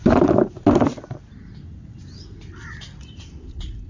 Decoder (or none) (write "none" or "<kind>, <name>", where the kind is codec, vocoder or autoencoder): none